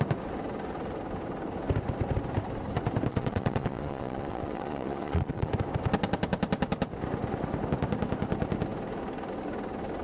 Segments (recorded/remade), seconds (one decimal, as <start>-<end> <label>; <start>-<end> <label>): 0.0-3.1 recorded; 3.1-5.5 remade; 5.5-10.0 recorded